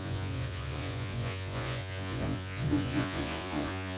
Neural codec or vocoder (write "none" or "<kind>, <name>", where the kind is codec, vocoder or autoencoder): vocoder, Vocos